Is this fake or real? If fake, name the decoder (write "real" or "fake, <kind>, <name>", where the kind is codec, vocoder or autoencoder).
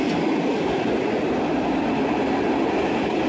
real